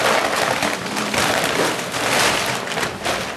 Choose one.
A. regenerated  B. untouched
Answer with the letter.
B